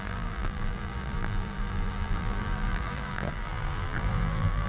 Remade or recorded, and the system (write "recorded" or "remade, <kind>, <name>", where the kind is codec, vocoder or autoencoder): remade, vocoder, BigVGAN v2